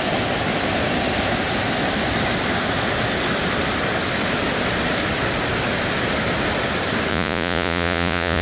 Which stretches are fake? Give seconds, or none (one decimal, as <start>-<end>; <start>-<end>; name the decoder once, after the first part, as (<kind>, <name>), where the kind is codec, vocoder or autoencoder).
7.1-8.4 (vocoder, Vocos)